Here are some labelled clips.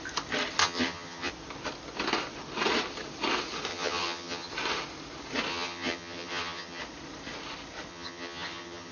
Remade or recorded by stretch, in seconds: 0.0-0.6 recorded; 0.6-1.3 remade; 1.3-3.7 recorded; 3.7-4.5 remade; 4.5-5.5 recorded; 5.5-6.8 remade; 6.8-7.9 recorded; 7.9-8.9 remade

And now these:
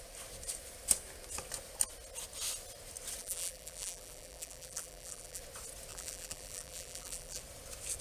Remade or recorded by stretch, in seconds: 0.0-3.2 recorded; 3.2-5.4 remade; 5.4-5.9 recorded; 5.9-7.4 remade; 7.4-8.0 recorded